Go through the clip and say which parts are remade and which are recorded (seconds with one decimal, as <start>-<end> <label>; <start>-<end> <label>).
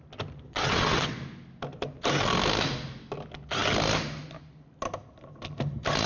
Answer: 0.0-0.5 recorded; 0.5-1.2 remade; 1.2-6.1 recorded